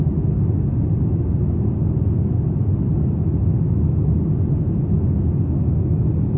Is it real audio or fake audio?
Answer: real